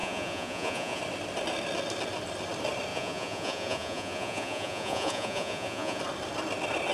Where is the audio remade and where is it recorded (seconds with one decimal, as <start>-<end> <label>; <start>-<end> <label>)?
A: 0.0-1.0 remade; 1.0-2.9 recorded; 2.9-6.0 remade; 6.0-6.9 recorded